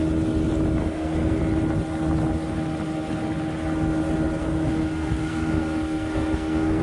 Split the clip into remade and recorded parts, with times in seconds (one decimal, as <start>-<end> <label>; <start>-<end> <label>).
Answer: 0.0-0.8 recorded; 0.8-1.4 remade; 1.4-4.4 recorded; 4.4-6.8 remade